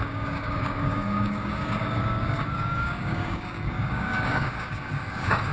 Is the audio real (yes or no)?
no